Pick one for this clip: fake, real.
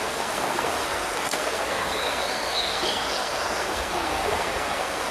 fake